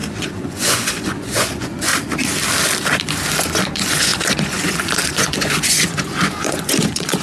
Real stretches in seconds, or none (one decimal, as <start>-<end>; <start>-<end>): 1.9-3.3

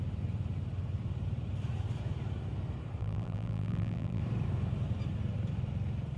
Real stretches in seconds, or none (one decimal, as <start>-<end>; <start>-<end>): 0.0-3.0; 4.2-6.2